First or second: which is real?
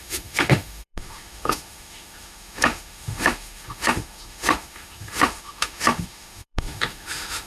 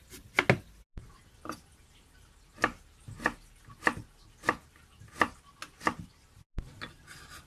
second